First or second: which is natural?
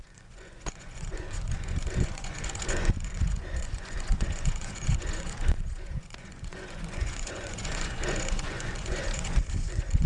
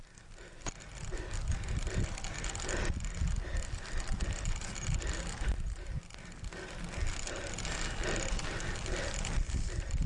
second